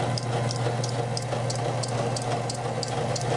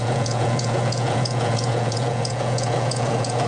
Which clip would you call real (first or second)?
first